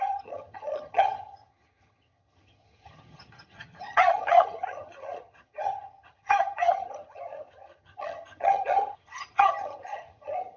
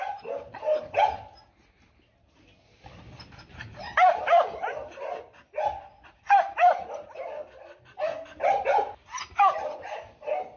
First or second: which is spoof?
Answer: first